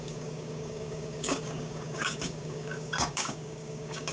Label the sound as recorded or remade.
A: remade